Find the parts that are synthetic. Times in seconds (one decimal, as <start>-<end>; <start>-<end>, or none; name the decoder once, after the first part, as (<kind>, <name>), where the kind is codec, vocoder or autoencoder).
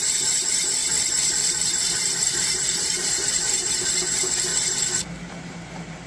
0.0-0.8 (vocoder, BigVGAN v2); 1.7-6.1